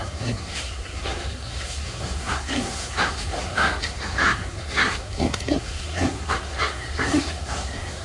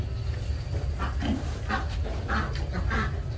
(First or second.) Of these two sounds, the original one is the second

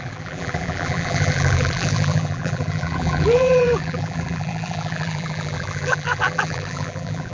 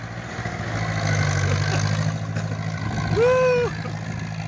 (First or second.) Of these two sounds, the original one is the second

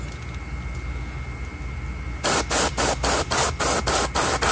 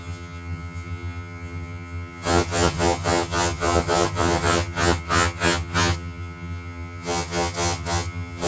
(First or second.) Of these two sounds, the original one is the first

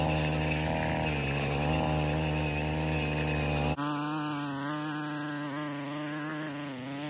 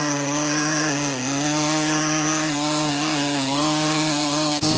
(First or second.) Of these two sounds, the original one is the first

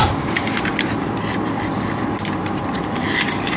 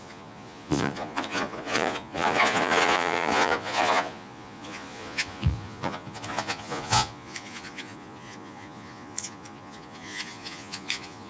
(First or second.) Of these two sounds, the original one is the first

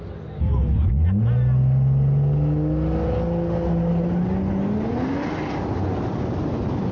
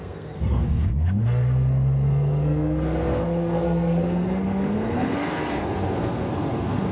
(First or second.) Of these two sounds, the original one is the first